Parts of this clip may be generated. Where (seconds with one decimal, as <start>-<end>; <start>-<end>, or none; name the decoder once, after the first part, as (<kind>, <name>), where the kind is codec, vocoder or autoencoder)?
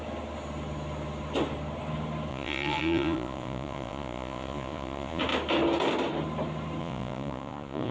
2.3-5.2 (vocoder, Vocos); 6.8-7.9